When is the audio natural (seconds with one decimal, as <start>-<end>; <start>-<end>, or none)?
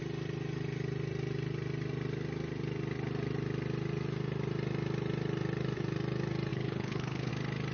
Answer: 0.0-6.5; 7.3-7.7